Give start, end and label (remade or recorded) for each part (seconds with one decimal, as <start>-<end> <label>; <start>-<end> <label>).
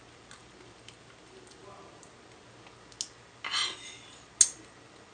0.0-5.1 recorded